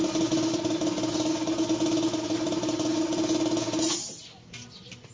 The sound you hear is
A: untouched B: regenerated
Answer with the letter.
A